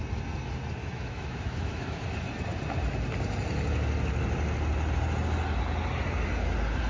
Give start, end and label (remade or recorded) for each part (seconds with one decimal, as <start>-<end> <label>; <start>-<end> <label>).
0.0-0.8 recorded; 0.8-2.0 remade; 2.0-6.9 recorded